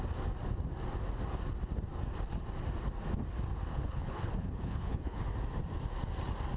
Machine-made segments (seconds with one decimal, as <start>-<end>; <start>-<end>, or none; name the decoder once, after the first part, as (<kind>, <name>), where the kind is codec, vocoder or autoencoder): 3.7-5.2 (codec, HILCodec)